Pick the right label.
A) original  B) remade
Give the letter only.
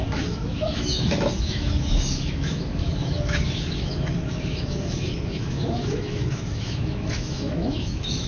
B